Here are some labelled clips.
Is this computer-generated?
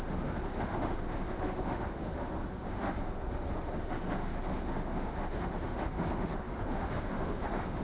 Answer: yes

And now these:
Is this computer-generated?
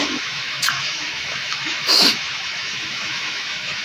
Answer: yes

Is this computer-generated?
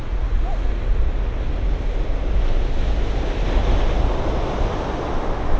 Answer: no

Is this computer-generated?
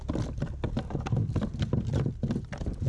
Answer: no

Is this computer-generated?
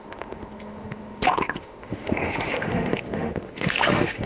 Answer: yes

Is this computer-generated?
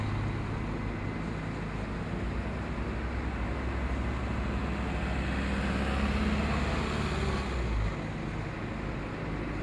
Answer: no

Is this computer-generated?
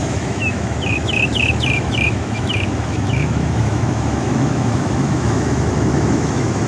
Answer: yes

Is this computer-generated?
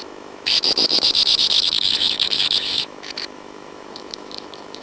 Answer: yes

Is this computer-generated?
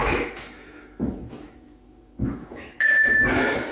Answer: yes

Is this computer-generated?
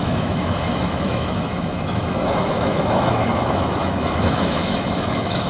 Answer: yes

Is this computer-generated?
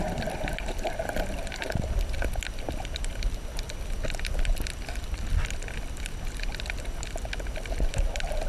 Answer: no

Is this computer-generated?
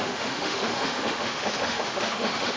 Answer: yes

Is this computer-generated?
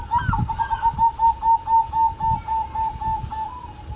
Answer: no